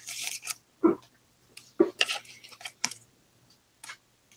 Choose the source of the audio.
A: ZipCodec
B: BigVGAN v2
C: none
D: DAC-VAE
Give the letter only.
B